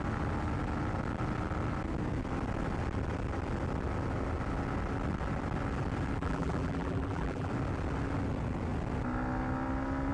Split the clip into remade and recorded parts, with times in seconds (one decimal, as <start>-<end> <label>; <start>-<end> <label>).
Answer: 0.0-6.2 recorded; 6.2-7.5 remade; 7.5-10.1 recorded